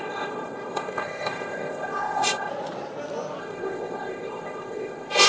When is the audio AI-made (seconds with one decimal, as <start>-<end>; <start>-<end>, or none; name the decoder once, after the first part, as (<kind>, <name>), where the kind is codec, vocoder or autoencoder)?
0.0-2.5 (codec, ZipCodec); 3.4-5.3